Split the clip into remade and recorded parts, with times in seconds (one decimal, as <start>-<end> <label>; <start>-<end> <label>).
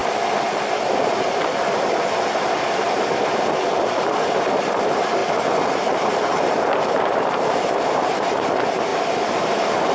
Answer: 0.0-4.2 recorded; 4.2-5.2 remade; 5.2-5.8 recorded; 5.8-9.9 remade